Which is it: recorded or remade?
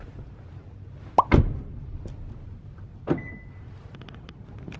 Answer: recorded